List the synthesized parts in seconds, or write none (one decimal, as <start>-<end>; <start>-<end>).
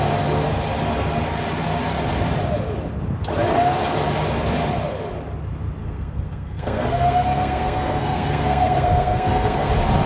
5.8-9.7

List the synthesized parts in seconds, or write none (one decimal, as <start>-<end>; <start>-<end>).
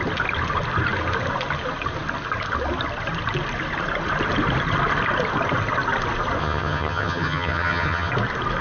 6.4-8.1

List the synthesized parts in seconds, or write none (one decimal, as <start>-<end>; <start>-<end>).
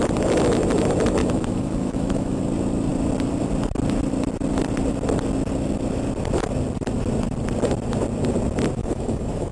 1.2-2.4; 8.8-9.5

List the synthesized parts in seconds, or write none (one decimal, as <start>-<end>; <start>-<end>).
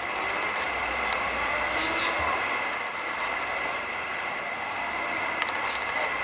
0.8-4.5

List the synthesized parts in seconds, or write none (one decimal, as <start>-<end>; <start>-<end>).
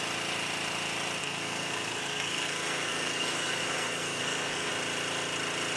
1.2-4.7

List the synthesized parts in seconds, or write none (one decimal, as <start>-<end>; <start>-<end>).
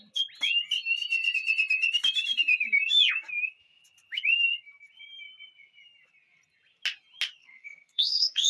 7.4-8.5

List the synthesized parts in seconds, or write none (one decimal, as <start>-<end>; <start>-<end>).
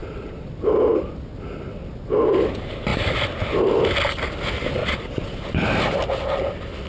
0.0-0.5; 4.8-5.4